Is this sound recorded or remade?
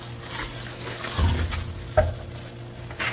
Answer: recorded